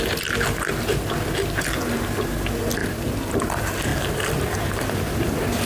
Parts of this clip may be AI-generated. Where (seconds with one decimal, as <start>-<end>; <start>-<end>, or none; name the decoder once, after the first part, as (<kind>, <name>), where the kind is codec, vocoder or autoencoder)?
none